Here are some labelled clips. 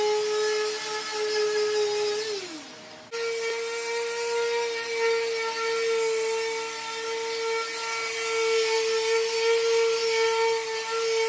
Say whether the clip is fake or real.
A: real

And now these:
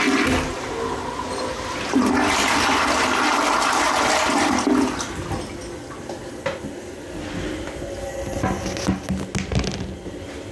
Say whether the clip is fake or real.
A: real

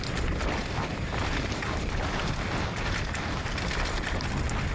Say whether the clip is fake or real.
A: real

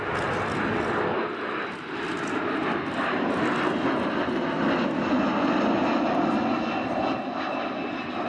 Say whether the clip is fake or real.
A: real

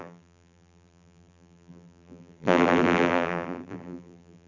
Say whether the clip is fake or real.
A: fake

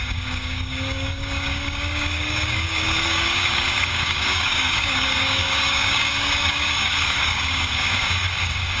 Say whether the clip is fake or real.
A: fake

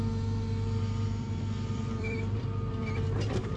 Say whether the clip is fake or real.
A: fake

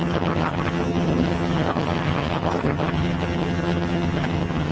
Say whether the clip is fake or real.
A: fake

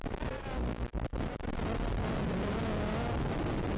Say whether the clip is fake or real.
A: real